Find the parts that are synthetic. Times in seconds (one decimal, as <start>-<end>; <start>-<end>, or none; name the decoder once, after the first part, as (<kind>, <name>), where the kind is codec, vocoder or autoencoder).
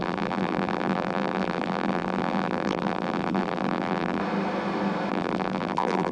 0.0-4.2 (vocoder, BigVGAN v2); 5.1-6.1